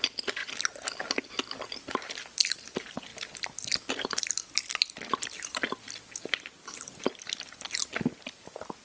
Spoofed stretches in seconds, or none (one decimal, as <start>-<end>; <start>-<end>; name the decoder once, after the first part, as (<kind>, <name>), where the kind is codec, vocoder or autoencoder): none